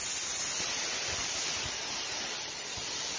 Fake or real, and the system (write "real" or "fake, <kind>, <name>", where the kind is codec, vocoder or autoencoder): real